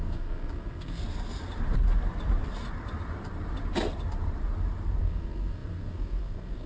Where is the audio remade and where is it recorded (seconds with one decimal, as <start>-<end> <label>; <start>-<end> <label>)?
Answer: 0.0-1.0 remade; 1.0-5.0 recorded; 5.0-6.7 remade